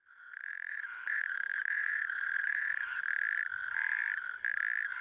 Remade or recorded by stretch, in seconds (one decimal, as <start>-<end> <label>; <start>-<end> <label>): 0.0-3.0 remade; 3.0-5.0 recorded